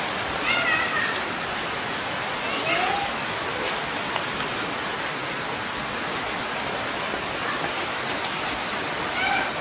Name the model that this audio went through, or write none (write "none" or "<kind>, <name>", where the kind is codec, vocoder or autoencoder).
none